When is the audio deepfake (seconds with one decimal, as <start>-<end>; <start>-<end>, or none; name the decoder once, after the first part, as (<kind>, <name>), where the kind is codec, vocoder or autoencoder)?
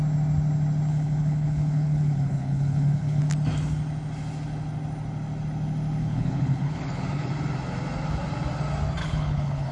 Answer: 0.9-3.2 (codec, HILCodec); 6.0-7.3; 9.0-9.7